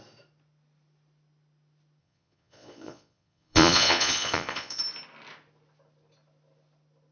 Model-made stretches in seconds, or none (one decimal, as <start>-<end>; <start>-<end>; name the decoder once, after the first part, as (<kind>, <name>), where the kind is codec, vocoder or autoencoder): 2.0-4.8 (vocoder, Vocos)